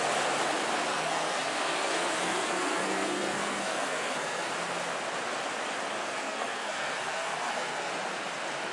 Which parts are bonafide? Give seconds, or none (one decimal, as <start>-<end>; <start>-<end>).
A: 0.0-0.9; 4.5-6.0; 7.9-8.7